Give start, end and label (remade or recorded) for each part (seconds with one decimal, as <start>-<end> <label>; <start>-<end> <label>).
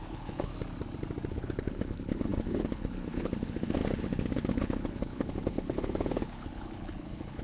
0.0-0.5 remade; 0.5-1.3 recorded; 1.3-7.4 remade